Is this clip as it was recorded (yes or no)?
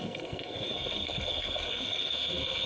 no